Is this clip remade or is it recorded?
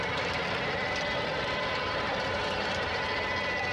recorded